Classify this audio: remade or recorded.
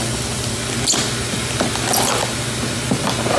recorded